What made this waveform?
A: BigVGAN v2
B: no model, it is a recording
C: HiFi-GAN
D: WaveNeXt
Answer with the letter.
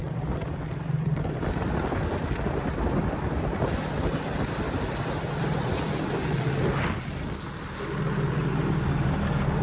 B